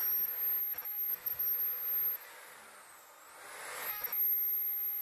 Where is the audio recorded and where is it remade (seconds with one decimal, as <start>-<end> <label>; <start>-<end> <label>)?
0.0-0.6 recorded; 0.6-1.1 remade; 1.1-3.9 recorded; 3.9-5.0 remade